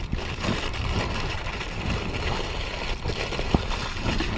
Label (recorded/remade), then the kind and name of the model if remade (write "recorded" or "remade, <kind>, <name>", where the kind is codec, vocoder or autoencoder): recorded